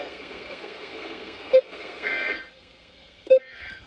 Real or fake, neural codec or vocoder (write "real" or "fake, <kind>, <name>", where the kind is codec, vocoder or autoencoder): fake, codec, SNAC